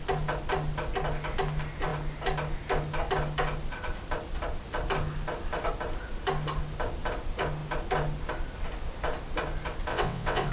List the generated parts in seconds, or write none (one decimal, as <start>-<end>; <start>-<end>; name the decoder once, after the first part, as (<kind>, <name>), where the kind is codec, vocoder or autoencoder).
9.9-10.5 (vocoder, WaveNeXt)